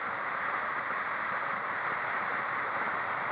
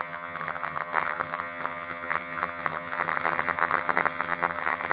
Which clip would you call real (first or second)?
first